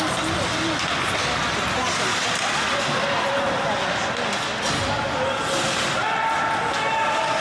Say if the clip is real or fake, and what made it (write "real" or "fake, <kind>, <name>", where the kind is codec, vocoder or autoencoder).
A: real